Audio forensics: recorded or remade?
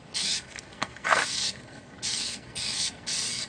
remade